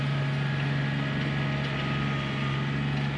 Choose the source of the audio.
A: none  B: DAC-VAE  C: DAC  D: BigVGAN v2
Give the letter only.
A